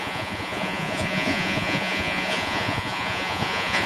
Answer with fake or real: fake